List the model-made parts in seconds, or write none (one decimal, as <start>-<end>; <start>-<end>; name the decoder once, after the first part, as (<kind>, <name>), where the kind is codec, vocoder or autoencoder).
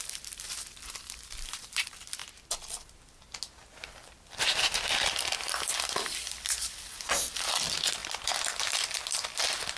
0.0-2.2 (vocoder, BigVGAN v2); 3.7-9.8